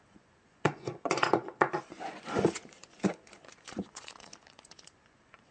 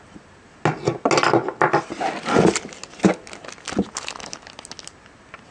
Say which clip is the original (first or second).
second